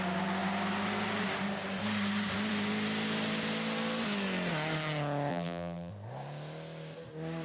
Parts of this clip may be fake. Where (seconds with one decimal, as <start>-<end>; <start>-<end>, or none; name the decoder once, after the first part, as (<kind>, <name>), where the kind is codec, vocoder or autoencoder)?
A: 5.3-5.9 (vocoder, BigVGAN v2)